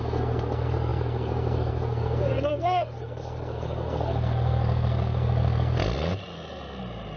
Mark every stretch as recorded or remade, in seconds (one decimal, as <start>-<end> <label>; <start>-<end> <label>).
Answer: 0.0-5.8 remade; 5.8-7.2 recorded